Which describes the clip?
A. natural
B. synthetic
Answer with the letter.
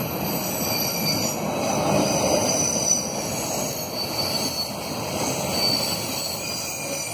A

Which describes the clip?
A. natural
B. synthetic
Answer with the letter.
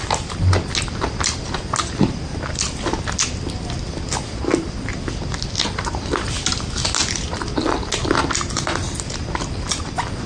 A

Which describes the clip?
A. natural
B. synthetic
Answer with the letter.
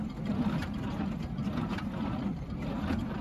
B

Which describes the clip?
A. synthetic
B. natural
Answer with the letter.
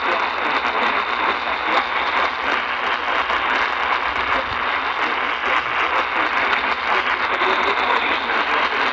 B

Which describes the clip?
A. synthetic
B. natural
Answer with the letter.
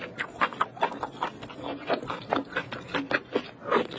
B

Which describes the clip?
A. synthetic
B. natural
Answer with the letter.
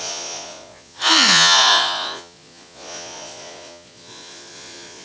A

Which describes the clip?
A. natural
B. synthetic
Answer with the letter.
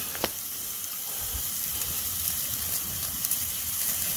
B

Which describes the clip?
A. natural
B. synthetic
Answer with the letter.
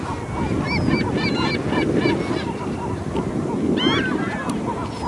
A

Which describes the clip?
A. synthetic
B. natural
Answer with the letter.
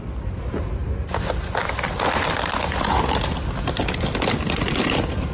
B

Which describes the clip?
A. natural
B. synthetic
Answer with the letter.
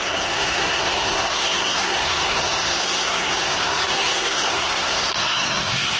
B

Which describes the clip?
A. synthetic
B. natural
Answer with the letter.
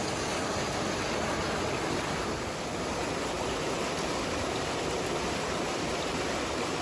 B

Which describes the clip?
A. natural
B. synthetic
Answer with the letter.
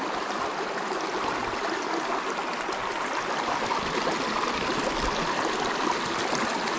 A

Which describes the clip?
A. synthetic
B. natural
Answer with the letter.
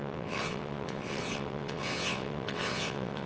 A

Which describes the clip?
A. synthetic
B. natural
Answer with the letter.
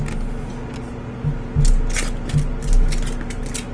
B